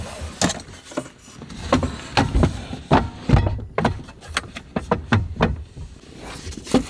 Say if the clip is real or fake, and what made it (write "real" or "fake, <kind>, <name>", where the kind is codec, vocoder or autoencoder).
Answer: real